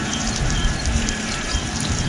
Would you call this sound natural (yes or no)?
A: no